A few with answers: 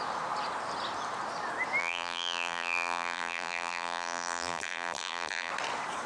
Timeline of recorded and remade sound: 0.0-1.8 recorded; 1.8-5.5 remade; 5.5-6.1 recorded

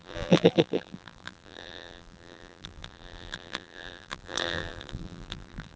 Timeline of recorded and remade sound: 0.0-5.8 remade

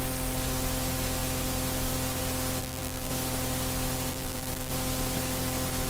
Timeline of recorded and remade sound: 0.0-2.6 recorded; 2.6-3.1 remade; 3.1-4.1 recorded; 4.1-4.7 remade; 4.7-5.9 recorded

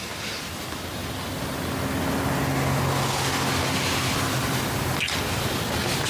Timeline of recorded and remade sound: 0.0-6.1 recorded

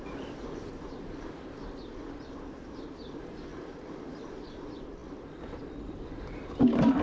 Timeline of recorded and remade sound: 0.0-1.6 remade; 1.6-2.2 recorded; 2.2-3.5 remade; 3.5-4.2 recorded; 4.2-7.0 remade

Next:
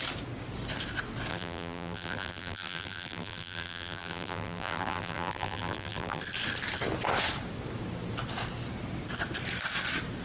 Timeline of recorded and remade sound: 0.0-1.3 recorded; 1.3-6.2 remade; 6.2-10.2 recorded

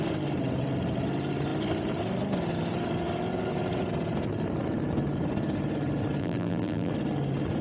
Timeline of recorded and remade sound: 0.0-6.2 recorded; 6.2-6.9 remade; 6.9-7.6 recorded

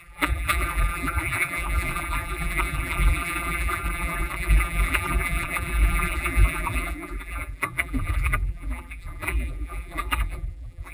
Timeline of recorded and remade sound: 0.0-10.9 remade